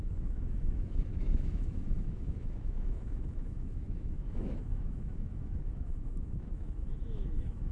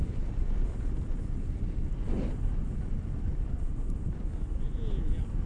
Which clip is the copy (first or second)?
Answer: first